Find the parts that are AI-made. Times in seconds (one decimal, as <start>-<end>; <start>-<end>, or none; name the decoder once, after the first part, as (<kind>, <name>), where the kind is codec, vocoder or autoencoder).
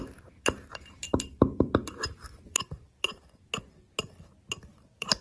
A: 0.0-3.1 (vocoder, BigVGAN v2); 4.7-5.2